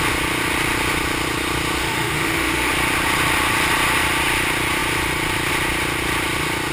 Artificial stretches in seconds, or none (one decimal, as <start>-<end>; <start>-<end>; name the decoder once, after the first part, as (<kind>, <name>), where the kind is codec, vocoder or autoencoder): 1.8-2.7 (autoencoder, DAC-VAE)